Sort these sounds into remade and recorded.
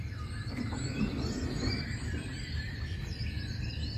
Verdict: remade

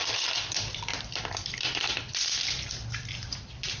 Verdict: remade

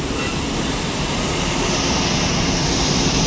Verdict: recorded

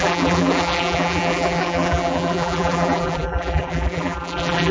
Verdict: remade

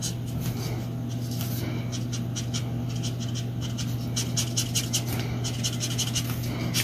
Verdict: recorded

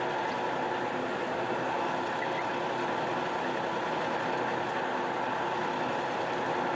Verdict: recorded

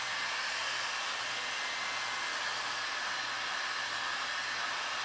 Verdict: recorded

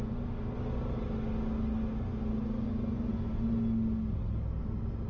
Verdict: recorded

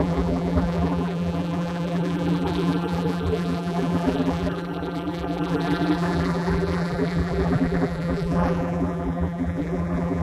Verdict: remade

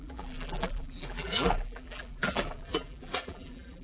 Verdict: remade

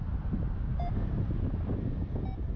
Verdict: recorded